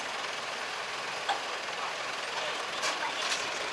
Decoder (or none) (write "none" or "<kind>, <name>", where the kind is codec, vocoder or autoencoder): none